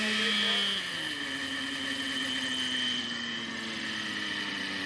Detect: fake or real real